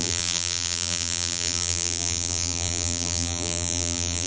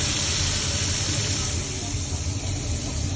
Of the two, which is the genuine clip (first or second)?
second